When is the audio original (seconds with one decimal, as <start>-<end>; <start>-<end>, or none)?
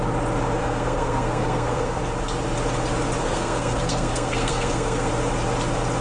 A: 0.0-0.6; 2.0-3.2; 5.1-6.0